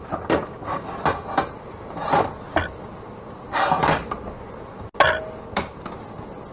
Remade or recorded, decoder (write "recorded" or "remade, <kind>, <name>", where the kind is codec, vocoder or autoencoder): recorded